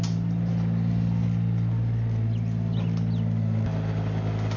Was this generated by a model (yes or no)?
no